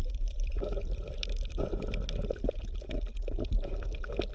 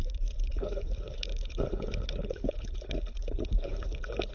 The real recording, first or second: first